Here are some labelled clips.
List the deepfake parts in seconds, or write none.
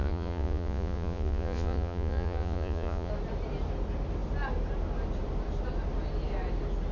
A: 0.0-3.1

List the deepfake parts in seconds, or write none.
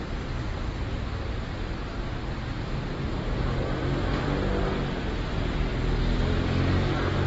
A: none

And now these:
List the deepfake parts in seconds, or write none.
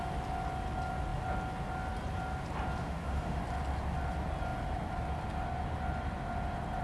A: 2.8-3.4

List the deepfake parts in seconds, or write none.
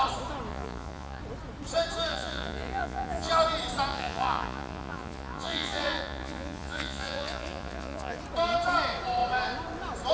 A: 0.5-1.2; 2.1-3.3; 3.9-8.2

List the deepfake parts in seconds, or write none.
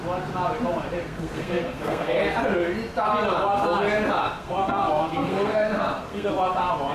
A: 1.0-2.2; 4.2-6.3